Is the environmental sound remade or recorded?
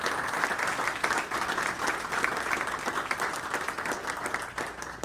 recorded